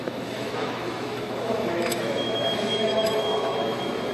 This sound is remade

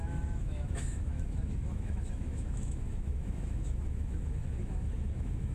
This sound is remade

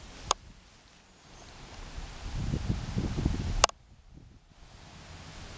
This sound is recorded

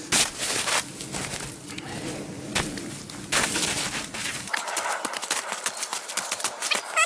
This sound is recorded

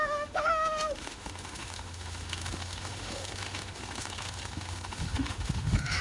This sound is remade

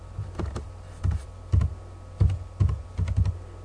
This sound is recorded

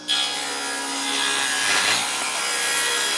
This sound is recorded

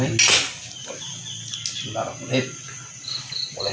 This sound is recorded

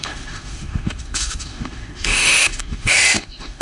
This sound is remade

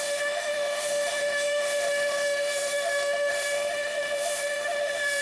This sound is remade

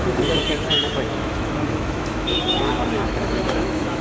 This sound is remade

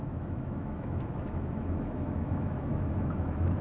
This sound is remade